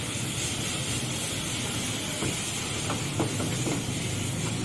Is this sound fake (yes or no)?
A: no